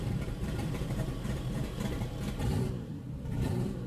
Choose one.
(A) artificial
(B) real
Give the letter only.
A